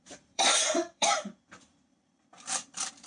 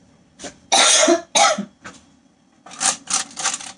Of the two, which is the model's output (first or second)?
first